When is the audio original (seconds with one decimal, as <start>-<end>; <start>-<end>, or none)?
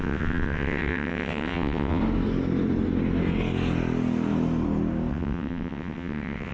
2.0-5.1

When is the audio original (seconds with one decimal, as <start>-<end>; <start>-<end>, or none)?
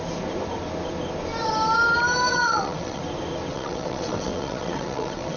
0.0-2.3; 3.0-3.5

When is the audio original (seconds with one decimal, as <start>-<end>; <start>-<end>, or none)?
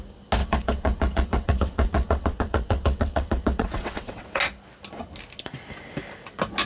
0.0-0.4; 4.4-6.7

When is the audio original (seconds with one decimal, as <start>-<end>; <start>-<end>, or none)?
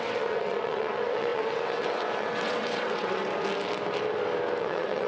3.2-4.6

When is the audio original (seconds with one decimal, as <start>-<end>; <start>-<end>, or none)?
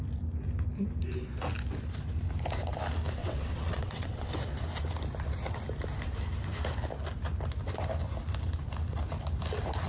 0.0-3.2; 4.3-9.9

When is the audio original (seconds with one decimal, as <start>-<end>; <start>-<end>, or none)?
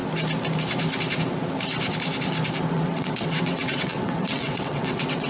0.0-2.7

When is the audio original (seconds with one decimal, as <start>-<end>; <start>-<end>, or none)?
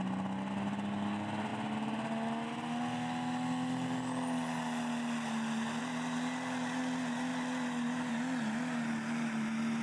0.0-9.8